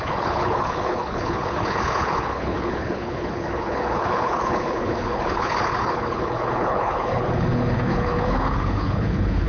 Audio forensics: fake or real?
fake